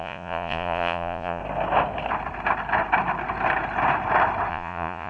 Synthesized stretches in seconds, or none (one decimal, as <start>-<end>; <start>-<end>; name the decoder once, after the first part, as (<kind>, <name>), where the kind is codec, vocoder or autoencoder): 0.0-1.4 (vocoder, Vocos); 4.5-5.1